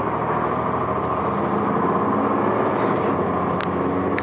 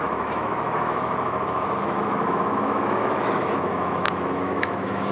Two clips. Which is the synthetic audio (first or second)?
second